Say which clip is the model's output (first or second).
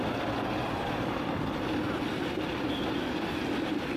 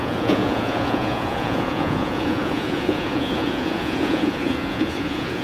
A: second